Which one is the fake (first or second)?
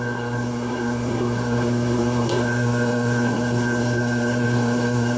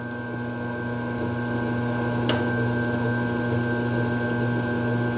first